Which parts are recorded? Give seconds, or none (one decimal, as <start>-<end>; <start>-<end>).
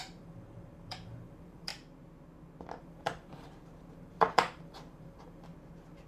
1.7-2.8; 5.5-6.1